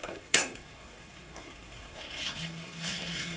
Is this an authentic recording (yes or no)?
no